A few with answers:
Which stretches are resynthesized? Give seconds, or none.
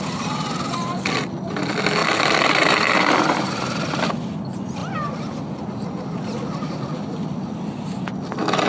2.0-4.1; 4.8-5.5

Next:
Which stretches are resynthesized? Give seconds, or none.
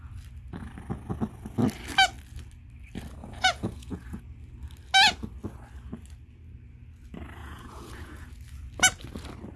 3.2-4.2; 7.4-8.3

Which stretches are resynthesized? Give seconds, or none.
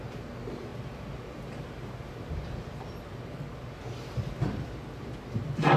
none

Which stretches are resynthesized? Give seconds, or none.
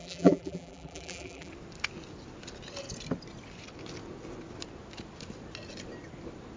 0.0-1.5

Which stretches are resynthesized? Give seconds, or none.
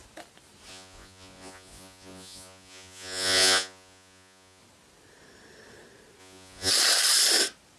0.7-4.6; 6.2-6.7